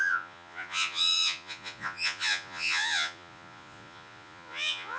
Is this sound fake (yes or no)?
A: yes